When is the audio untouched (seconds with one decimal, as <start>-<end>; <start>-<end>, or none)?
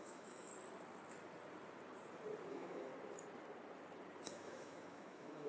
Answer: 0.5-2.5; 2.9-4.3